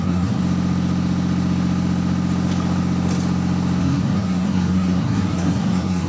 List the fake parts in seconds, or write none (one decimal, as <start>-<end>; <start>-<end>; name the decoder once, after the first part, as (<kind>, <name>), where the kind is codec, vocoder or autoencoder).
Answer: 0.0-0.4 (codec, SNAC); 3.8-6.1